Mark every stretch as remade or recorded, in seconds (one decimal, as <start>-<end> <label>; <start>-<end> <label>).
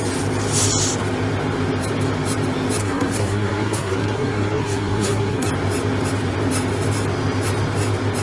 0.0-2.8 recorded; 2.8-5.5 remade; 5.5-8.2 recorded